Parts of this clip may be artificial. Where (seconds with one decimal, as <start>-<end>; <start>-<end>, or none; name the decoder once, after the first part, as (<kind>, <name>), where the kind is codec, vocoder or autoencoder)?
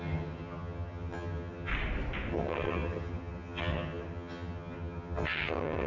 0.0-1.7 (vocoder, HiFi-GAN); 2.3-5.9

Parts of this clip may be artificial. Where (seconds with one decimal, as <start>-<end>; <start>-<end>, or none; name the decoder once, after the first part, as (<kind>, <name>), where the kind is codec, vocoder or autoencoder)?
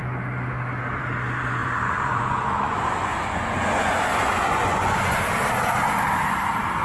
1.6-5.2 (vocoder, Vocos)